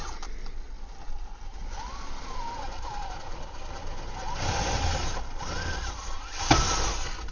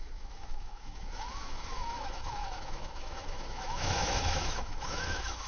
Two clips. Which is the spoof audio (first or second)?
second